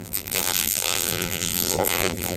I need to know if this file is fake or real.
fake